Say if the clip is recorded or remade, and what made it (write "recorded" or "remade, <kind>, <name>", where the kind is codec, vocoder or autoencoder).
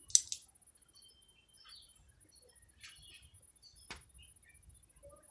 recorded